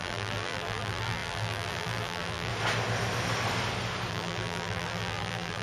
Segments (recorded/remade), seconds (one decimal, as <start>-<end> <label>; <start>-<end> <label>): 0.0-2.5 remade; 2.5-4.1 recorded; 4.1-5.6 remade